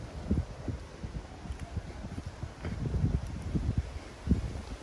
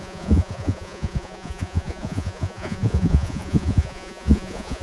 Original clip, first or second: first